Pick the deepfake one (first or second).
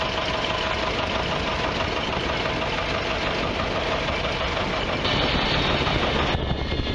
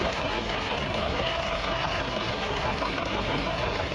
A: second